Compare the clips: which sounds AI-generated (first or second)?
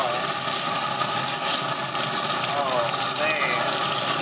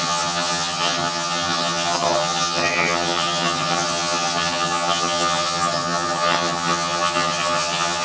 second